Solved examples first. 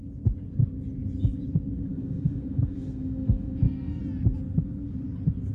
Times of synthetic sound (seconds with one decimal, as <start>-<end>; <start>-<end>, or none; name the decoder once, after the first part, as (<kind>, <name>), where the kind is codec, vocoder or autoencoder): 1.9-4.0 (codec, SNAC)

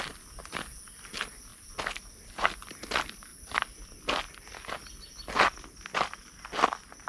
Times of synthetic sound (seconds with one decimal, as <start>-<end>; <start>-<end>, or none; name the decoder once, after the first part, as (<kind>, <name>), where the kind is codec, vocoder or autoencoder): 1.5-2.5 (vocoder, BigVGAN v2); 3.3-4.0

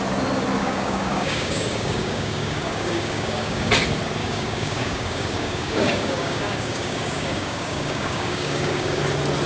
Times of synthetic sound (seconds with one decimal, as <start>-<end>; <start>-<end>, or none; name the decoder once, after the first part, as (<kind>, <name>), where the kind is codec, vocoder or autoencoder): 0.6-3.7 (codec, DAC); 4.2-9.0